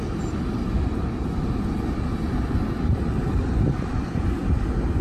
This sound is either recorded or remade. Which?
recorded